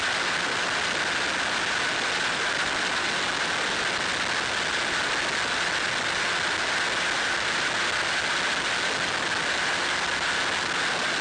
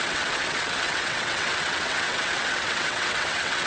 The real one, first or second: first